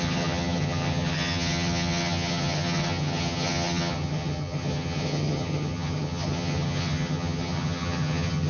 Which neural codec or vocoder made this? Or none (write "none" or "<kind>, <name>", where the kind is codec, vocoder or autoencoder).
vocoder, HiFi-GAN